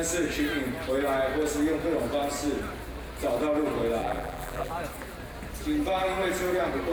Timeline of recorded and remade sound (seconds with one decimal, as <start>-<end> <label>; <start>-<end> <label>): 0.0-4.0 recorded; 4.0-4.7 remade; 4.7-6.9 recorded